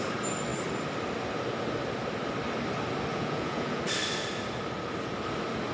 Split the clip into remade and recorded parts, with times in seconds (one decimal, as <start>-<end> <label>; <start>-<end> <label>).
0.0-3.1 recorded; 3.1-3.8 remade; 3.8-5.7 recorded